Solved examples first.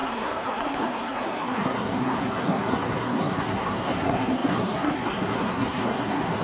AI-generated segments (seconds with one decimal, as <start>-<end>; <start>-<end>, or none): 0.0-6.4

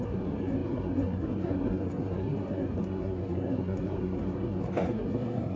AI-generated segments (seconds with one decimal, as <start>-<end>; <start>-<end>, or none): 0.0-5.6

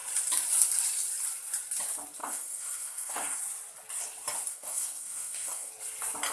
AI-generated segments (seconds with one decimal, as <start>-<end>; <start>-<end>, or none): 2.2-3.4; 4.5-5.7

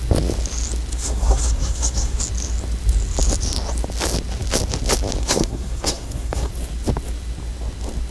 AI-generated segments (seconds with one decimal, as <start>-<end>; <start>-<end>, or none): 0.9-2.2; 5.2-6.5

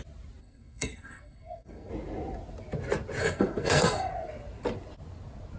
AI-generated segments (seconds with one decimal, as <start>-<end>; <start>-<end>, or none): 0.4-1.9; 3.2-4.1

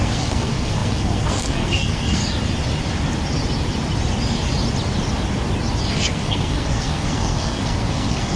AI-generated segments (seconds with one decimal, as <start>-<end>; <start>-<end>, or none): 0.0-2.2; 5.9-8.4

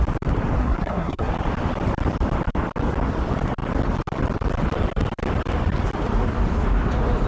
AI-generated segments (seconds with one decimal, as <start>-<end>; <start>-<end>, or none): 0.6-1.3